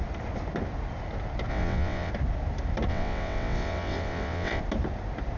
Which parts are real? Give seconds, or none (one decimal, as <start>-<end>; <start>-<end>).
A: 0.0-1.5; 2.1-2.9; 4.6-5.4

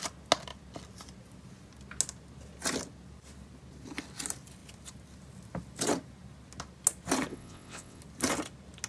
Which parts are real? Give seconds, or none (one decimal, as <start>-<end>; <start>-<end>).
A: 0.0-7.3; 8.0-8.9

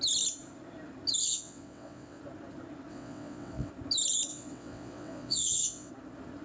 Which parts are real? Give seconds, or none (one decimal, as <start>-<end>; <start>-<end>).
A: 0.0-1.2; 2.2-2.9; 3.7-4.3; 5.9-6.4